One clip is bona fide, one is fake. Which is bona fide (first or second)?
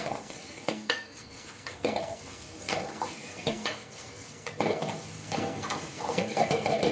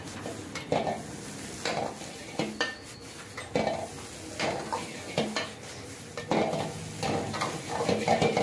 second